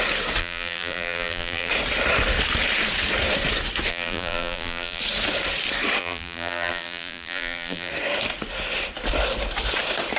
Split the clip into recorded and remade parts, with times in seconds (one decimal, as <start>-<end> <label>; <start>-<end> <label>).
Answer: 0.0-0.4 recorded; 0.4-1.7 remade; 1.7-3.9 recorded; 3.9-5.0 remade; 5.0-6.0 recorded; 6.0-7.9 remade; 7.9-10.2 recorded